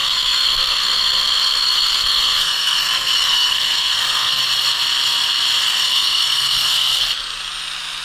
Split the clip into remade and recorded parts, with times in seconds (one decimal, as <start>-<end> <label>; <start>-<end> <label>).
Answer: 0.0-4.4 remade; 4.4-5.6 recorded; 5.6-7.0 remade; 7.0-8.0 recorded